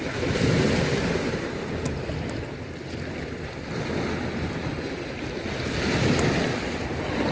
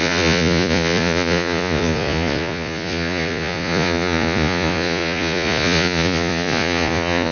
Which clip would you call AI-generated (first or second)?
second